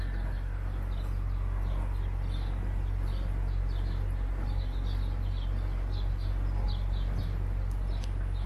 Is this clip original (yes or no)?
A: yes